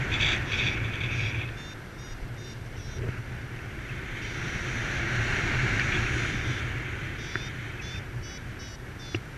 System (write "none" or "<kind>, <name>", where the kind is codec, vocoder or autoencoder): none